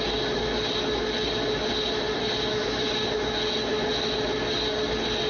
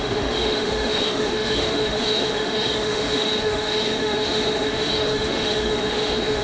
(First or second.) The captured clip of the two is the first